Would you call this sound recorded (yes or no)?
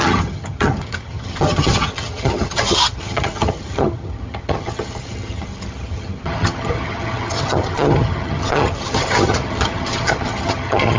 no